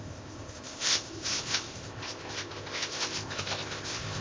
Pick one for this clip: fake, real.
fake